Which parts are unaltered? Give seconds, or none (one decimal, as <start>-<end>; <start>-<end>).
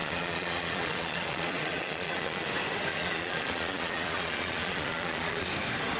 2.5-2.9; 5.5-6.0